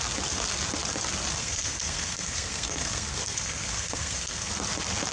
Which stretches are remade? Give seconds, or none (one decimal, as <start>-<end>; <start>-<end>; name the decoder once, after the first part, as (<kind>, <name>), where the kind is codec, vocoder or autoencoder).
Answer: 1.4-4.5 (codec, SNAC)